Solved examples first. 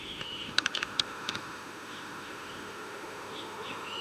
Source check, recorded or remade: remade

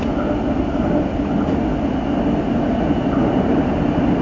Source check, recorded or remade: recorded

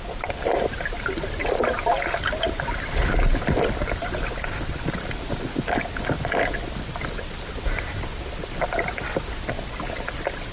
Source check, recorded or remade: recorded